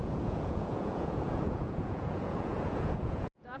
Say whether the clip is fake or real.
fake